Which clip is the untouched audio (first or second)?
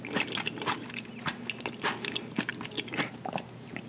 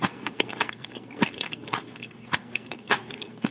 first